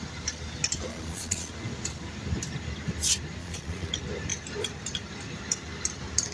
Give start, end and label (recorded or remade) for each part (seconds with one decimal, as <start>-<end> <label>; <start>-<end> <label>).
0.0-0.9 recorded; 0.9-1.5 remade; 1.5-3.4 recorded; 3.4-3.9 remade; 3.9-6.3 recorded